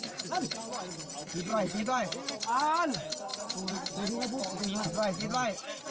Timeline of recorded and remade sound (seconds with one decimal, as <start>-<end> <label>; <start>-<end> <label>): 0.0-1.5 recorded; 1.5-2.4 remade; 2.4-3.3 recorded; 3.3-4.1 remade; 4.1-5.9 recorded